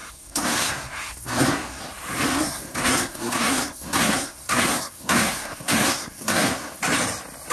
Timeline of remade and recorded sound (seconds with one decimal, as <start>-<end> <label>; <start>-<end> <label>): 0.0-1.8 remade; 1.8-2.3 recorded; 2.3-6.8 remade; 6.8-7.5 recorded